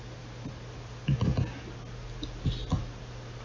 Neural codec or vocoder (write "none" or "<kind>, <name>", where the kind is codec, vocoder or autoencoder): none